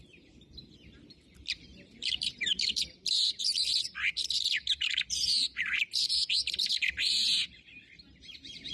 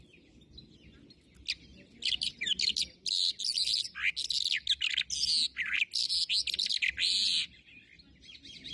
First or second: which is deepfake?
first